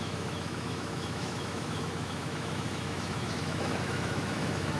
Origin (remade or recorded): remade